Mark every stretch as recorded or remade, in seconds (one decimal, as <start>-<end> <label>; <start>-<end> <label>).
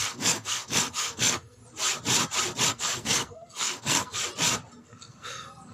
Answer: 0.0-1.6 remade; 1.6-2.7 recorded; 2.7-4.2 remade; 4.2-4.8 recorded; 4.8-5.7 remade